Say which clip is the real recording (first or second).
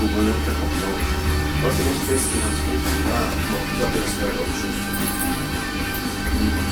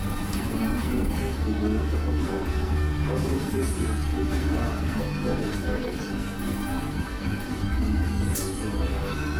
first